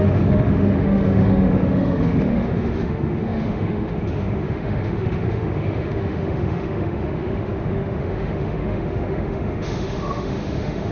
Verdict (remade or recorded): remade